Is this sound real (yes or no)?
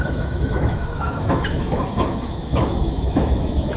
no